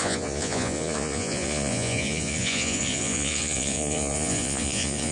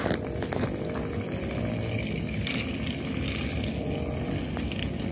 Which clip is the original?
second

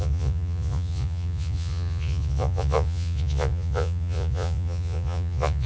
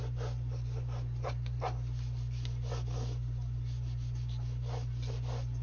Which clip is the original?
second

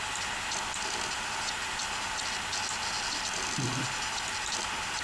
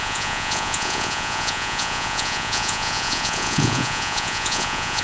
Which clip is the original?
first